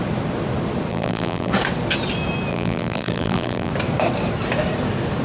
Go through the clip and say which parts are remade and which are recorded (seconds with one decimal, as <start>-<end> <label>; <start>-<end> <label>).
0.0-0.9 recorded; 0.9-1.5 remade; 1.5-2.5 recorded; 2.5-3.7 remade; 3.7-5.2 recorded

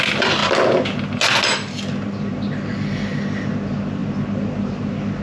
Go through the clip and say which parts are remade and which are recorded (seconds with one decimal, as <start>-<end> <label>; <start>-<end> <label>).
0.0-5.2 recorded

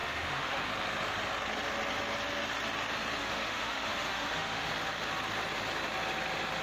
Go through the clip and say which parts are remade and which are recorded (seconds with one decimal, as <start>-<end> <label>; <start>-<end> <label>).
0.0-0.7 remade; 0.7-3.2 recorded; 3.2-4.7 remade; 4.7-6.6 recorded

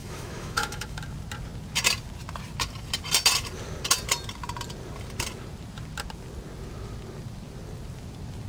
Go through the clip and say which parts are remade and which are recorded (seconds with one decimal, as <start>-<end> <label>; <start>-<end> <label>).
0.0-1.0 remade; 1.0-8.5 recorded

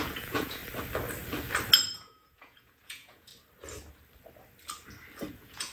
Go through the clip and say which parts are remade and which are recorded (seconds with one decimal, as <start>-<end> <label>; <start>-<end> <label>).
0.0-0.6 remade; 0.6-1.9 recorded; 1.9-3.3 remade; 3.3-5.3 recorded; 5.3-5.7 remade

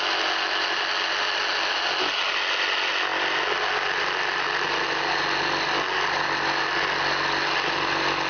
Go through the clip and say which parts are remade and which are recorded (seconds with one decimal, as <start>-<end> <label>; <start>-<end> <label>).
0.0-8.3 recorded